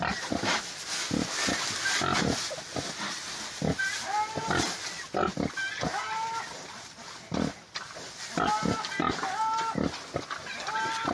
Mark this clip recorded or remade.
recorded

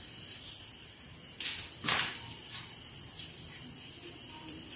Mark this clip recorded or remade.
remade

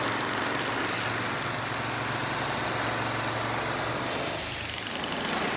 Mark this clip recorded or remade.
recorded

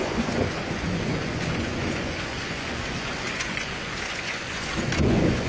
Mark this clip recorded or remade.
remade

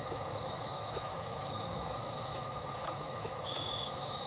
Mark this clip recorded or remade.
remade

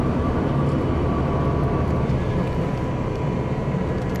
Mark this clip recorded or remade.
recorded